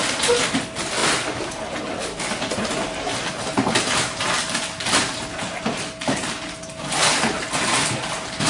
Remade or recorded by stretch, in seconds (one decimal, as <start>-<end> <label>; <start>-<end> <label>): 0.0-8.5 recorded